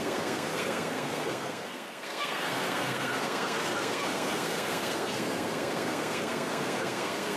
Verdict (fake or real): fake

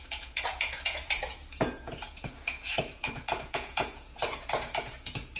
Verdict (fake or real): fake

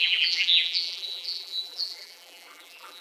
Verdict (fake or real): fake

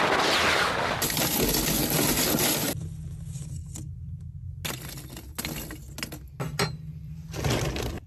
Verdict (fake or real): real